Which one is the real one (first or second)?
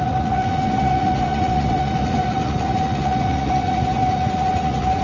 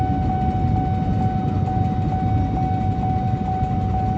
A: second